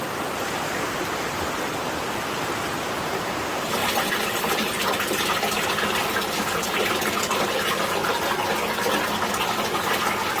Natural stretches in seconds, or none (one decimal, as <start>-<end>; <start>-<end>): 8.0-9.3